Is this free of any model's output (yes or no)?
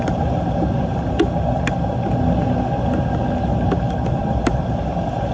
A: yes